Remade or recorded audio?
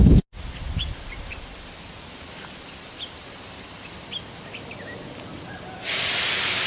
recorded